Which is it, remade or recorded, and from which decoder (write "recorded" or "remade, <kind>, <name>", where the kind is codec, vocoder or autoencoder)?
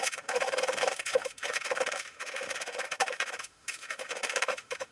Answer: remade, autoencoder, DAC-VAE